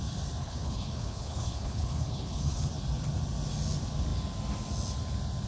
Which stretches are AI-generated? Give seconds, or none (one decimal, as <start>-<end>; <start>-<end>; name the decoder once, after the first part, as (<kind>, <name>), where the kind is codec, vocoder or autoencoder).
0.4-2.7 (codec, HILCodec)